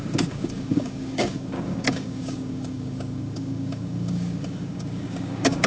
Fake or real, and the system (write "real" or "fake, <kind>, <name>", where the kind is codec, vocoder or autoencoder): fake, codec, DAC